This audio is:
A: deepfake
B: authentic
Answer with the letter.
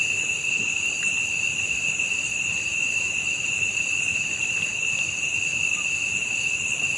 B